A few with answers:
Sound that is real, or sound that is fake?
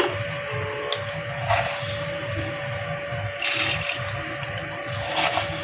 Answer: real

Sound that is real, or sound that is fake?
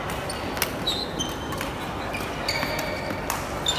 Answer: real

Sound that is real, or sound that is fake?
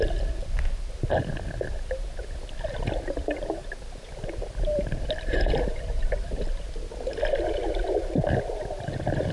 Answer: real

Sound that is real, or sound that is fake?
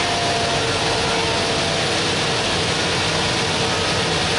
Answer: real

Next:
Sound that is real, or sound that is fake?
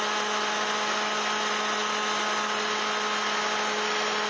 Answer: real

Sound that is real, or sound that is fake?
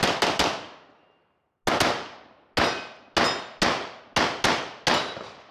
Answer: real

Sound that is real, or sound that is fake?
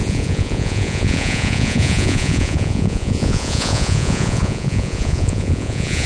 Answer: fake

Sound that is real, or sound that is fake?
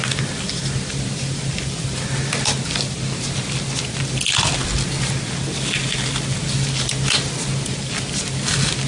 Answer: real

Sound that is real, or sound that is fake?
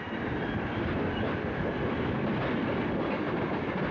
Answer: real